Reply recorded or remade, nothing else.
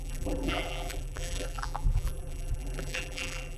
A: remade